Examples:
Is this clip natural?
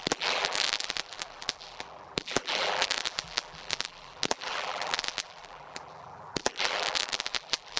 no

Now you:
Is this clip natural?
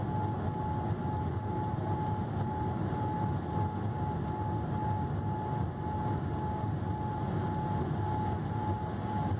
yes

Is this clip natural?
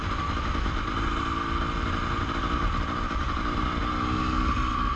yes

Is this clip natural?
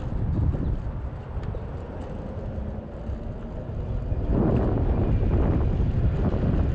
yes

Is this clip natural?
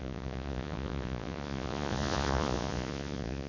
no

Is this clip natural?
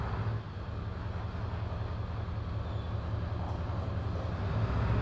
yes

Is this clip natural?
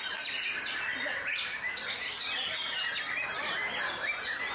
yes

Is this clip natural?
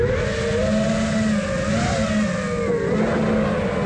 yes